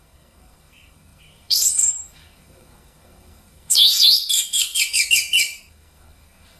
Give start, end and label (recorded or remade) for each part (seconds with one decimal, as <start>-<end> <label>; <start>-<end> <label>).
0.0-6.6 remade